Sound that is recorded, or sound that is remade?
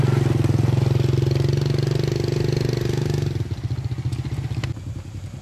recorded